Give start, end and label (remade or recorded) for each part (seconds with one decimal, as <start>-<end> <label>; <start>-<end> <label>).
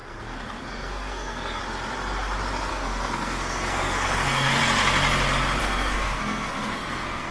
0.0-1.6 remade; 1.6-2.7 recorded; 2.7-4.6 remade; 4.6-5.6 recorded; 5.6-7.3 remade